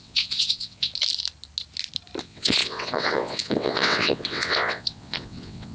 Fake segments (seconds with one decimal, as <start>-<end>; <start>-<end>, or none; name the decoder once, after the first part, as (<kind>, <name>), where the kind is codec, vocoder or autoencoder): 0.0-0.9 (vocoder, WaveNeXt); 2.2-5.7